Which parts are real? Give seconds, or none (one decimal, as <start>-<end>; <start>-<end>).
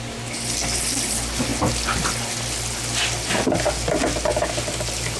0.0-5.2